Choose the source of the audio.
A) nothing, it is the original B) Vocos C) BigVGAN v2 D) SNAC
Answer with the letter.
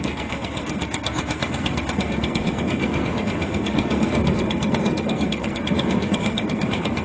D